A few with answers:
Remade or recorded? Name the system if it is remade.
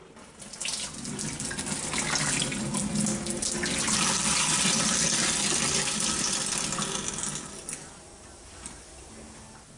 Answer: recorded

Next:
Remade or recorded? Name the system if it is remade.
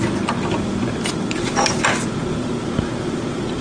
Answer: recorded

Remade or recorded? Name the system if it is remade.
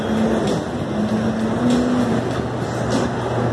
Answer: recorded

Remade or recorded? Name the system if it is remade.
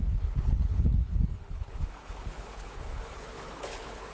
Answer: remade, codec, HILCodec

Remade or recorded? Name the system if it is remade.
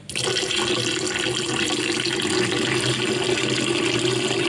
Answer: recorded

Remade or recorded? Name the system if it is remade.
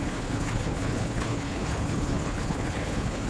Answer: remade, codec, HILCodec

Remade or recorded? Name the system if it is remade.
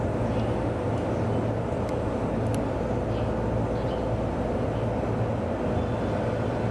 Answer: recorded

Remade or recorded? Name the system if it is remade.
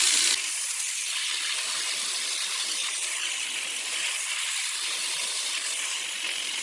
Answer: recorded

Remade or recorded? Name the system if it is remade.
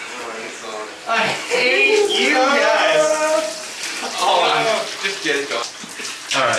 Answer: recorded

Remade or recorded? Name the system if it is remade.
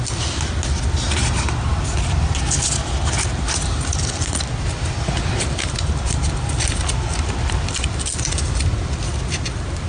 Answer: recorded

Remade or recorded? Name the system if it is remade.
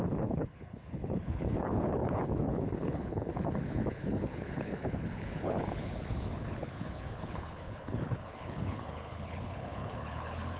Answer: remade, codec, HILCodec